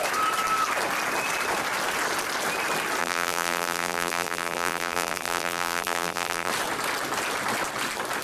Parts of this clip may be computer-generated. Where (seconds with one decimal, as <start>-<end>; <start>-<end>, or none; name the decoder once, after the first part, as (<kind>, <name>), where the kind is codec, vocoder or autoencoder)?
3.0-6.5 (vocoder, BigVGAN v2)